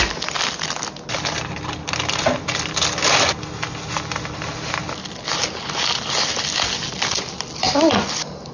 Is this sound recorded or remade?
recorded